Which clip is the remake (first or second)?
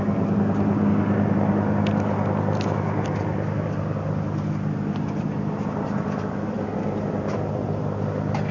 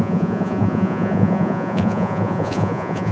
second